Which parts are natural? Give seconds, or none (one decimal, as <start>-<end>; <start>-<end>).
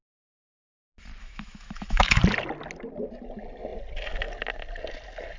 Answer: 0.0-1.2; 2.2-5.4